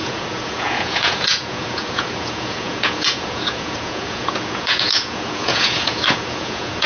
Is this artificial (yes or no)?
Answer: yes